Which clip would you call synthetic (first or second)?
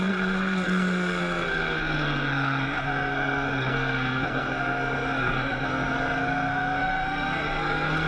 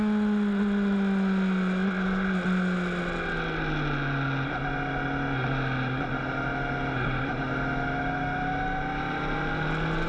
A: first